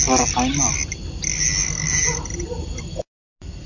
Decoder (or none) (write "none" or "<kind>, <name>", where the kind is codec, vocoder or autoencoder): none